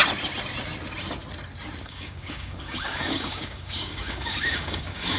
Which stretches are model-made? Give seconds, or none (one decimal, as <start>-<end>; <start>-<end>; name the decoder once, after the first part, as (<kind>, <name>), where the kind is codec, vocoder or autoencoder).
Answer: 1.8-5.2 (codec, DAC)